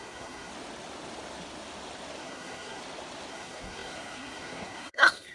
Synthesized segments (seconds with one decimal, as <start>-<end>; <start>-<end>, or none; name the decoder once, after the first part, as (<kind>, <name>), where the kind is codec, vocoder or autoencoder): 0.0-0.5 (codec, SNAC); 2.2-2.8; 3.3-5.3